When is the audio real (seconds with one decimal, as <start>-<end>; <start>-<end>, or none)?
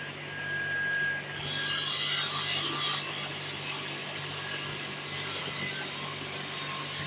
0.0-7.1